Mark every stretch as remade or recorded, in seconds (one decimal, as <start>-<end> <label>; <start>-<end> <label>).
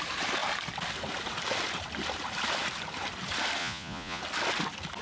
0.0-3.6 recorded; 3.6-4.2 remade; 4.2-5.0 recorded